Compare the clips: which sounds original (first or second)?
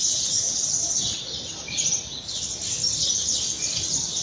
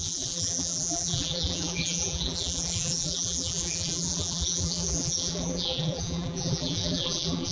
first